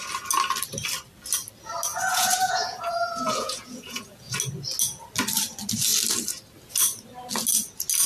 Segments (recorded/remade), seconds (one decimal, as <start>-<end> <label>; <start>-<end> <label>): 0.0-1.9 recorded; 1.9-4.3 remade; 4.3-8.1 recorded